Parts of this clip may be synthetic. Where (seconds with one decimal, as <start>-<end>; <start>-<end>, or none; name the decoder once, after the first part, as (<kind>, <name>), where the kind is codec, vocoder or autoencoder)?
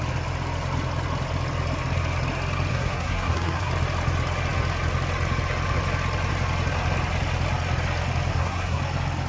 2.7-3.7 (codec, SNAC); 8.3-8.8